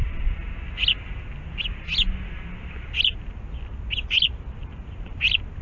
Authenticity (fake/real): real